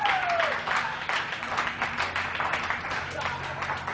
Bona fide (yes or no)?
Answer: yes